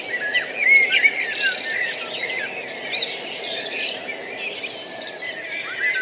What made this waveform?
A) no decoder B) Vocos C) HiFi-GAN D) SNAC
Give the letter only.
A